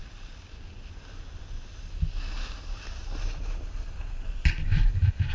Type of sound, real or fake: real